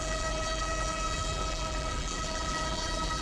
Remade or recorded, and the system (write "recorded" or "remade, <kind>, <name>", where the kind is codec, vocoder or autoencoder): remade, vocoder, BigVGAN v2